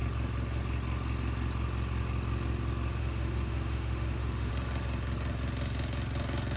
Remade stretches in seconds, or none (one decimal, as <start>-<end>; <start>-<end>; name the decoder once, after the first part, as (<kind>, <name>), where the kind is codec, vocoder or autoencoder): 3.0-4.5 (autoencoder, DAC-VAE)